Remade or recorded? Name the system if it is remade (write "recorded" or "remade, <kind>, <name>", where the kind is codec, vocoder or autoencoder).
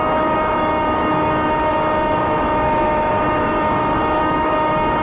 remade, codec, DAC